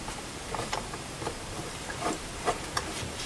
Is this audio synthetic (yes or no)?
yes